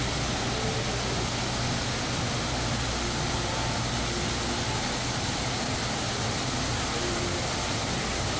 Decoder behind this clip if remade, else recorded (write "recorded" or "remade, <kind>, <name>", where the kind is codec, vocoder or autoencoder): recorded